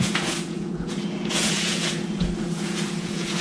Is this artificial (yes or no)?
yes